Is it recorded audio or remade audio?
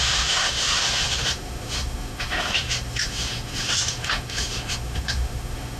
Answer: remade